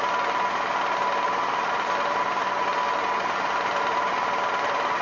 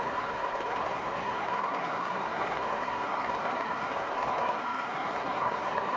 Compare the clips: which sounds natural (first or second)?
first